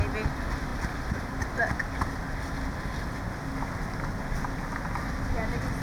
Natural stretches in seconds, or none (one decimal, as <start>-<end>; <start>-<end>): 0.0-5.8